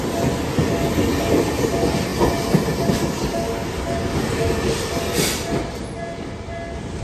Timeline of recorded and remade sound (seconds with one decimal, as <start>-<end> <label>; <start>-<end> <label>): 0.0-7.0 recorded